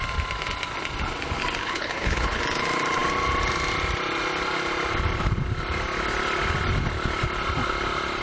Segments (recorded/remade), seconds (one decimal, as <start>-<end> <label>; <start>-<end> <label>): 0.0-1.6 recorded; 1.6-2.4 remade; 2.4-8.2 recorded